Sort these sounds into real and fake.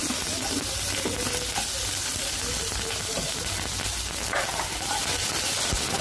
real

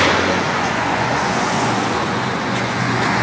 fake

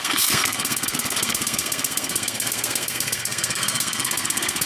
fake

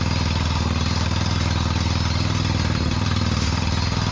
real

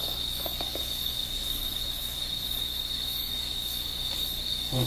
fake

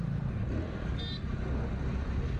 real